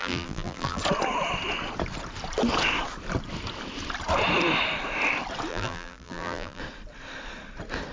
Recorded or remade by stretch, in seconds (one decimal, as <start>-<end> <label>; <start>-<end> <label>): 0.0-0.8 remade; 0.8-5.5 recorded; 5.5-6.6 remade; 6.6-7.9 recorded